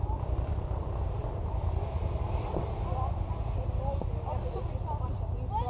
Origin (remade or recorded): remade